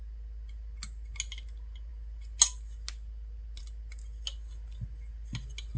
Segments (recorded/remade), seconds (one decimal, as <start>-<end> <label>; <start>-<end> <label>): 0.0-5.8 recorded

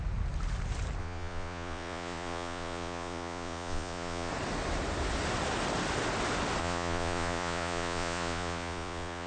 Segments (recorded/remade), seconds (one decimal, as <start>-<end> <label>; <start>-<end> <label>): 0.0-1.0 recorded; 1.0-4.3 remade; 4.3-6.6 recorded; 6.6-9.3 remade

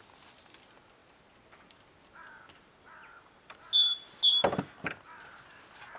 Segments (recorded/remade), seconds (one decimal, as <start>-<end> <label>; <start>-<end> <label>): 0.0-6.0 recorded

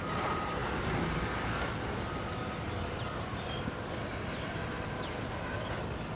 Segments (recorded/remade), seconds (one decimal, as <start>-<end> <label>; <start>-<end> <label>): 0.0-6.2 recorded